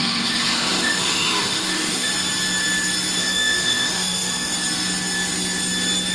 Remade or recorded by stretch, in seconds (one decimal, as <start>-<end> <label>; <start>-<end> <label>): 0.0-2.1 remade; 2.1-3.2 recorded; 3.2-4.5 remade; 4.5-6.1 recorded